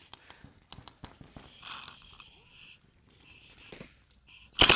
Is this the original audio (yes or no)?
yes